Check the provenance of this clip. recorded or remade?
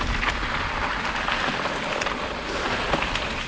recorded